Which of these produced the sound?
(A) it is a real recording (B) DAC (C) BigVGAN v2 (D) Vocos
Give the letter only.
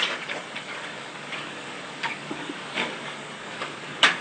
B